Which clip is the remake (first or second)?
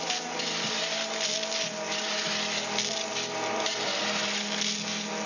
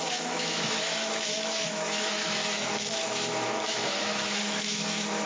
second